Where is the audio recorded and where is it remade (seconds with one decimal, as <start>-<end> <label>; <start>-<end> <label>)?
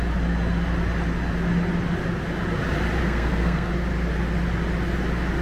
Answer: 0.0-3.0 recorded; 3.0-3.7 remade; 3.7-5.4 recorded